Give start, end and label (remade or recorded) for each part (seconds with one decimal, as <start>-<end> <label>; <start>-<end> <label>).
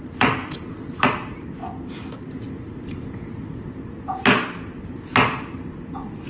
0.0-6.3 recorded